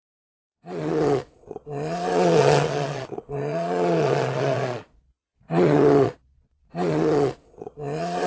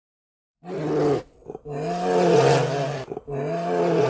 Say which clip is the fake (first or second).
first